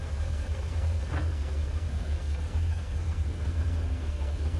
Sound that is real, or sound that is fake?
fake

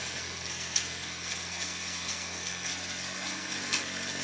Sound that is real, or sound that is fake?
fake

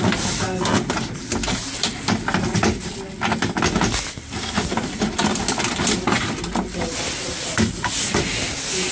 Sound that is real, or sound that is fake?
real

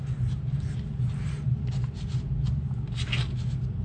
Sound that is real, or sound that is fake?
real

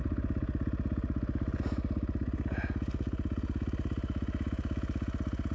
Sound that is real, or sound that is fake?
real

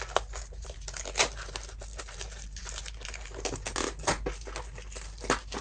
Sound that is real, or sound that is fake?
real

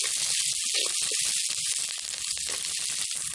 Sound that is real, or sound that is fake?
real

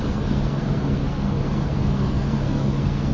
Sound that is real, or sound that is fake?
fake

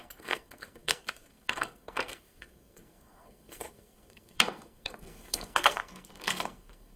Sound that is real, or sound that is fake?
fake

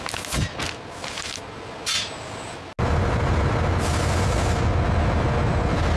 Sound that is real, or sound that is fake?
real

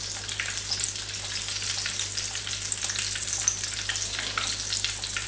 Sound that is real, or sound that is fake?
real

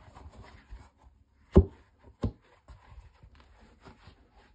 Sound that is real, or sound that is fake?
real